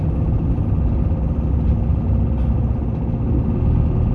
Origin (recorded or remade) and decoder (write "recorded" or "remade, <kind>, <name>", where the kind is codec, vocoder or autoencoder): recorded